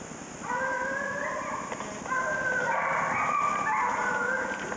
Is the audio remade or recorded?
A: recorded